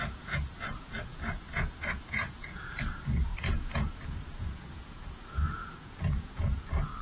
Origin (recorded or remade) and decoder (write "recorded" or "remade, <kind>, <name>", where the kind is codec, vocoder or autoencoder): remade, vocoder, Vocos